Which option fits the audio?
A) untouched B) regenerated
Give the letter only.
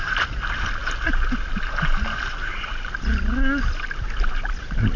A